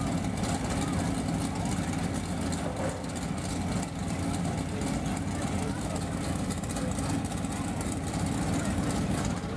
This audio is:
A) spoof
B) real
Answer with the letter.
B